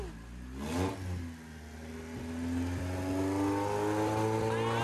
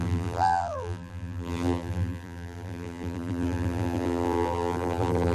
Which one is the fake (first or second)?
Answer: second